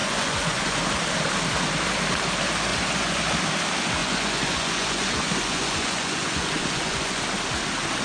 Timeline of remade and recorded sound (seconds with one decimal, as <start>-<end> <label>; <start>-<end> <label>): 0.0-0.8 remade; 0.8-2.7 recorded; 2.7-3.2 remade; 3.2-4.0 recorded; 4.0-7.2 remade; 7.2-8.0 recorded